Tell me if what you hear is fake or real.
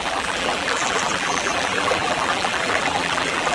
fake